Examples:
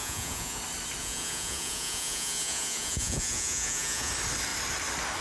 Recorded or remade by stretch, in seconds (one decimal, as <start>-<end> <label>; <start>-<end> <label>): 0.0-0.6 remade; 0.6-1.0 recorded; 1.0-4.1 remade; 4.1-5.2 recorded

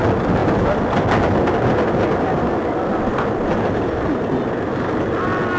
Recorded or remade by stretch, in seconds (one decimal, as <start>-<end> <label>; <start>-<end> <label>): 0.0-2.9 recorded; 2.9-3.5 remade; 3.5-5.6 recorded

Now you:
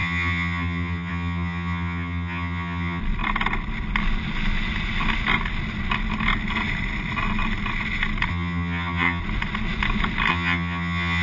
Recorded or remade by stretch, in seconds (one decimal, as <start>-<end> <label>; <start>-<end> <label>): 0.0-3.0 remade; 3.0-8.3 recorded; 8.3-9.2 remade; 9.2-10.3 recorded; 10.3-11.2 remade

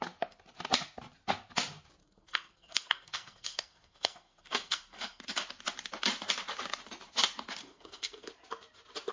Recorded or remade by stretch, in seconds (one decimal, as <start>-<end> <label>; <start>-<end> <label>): 0.0-2.0 recorded; 2.0-5.2 remade; 5.2-7.6 recorded; 7.6-8.3 remade; 8.3-9.1 recorded

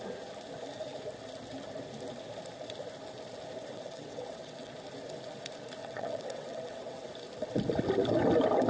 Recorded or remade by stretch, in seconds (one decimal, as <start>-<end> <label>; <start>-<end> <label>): 0.0-3.7 recorded; 3.7-4.7 remade; 4.7-5.8 recorded; 5.8-7.0 remade; 7.0-8.7 recorded

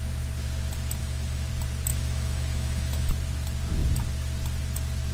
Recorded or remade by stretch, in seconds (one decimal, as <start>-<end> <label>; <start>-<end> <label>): 0.0-1.0 recorded; 1.0-1.5 remade; 1.5-1.9 recorded; 1.9-3.1 remade; 3.1-5.1 recorded